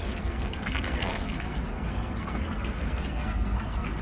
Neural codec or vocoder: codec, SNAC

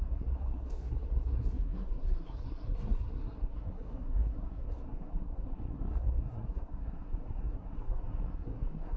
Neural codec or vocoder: codec, SNAC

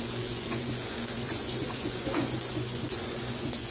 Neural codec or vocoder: vocoder, Vocos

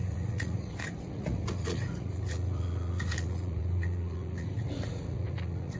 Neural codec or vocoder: vocoder, Vocos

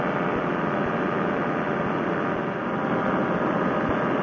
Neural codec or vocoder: none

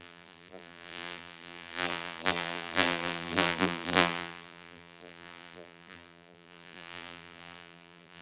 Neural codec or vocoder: vocoder, BigVGAN v2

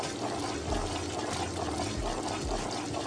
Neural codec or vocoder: none